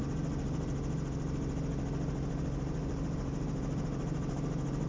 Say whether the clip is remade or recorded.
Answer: recorded